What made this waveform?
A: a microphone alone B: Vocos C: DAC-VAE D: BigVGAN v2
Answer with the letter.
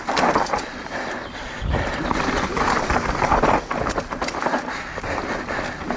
A